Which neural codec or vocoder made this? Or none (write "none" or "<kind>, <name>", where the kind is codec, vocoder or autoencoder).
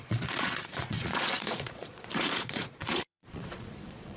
vocoder, Vocos